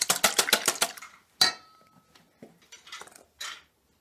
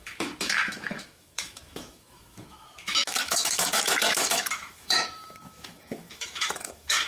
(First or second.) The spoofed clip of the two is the second